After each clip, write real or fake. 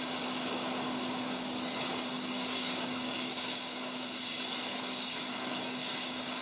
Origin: fake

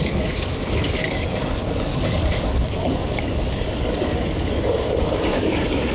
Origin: fake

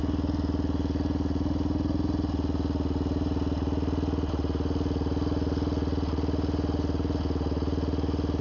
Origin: real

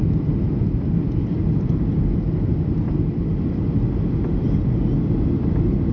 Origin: real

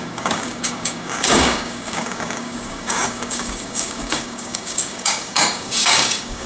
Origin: fake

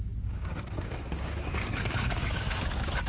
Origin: fake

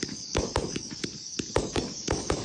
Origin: fake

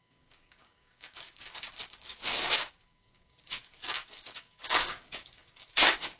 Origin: fake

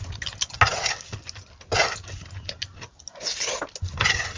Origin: real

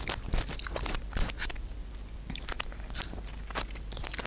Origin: real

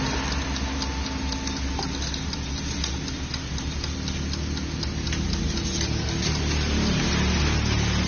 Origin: real